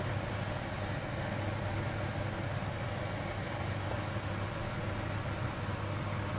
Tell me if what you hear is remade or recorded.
recorded